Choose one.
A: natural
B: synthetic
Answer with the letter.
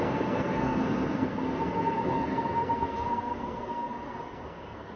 B